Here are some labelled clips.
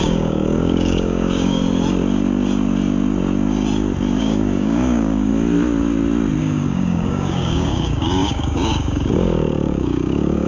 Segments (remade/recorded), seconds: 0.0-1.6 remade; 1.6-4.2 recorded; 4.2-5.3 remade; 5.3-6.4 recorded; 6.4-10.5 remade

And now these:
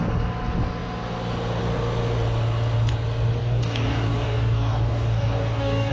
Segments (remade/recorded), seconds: 0.0-3.4 recorded; 3.4-5.9 remade